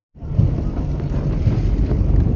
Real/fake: real